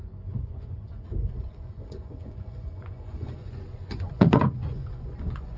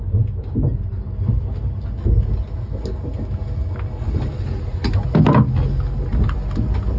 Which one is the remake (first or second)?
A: first